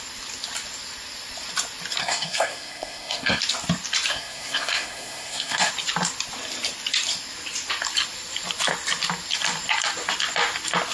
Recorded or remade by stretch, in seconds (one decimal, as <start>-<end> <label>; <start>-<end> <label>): 0.0-2.0 recorded; 2.0-3.4 remade; 3.4-4.1 recorded; 4.1-5.7 remade; 5.7-10.9 recorded